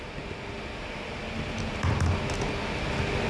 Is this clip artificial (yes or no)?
no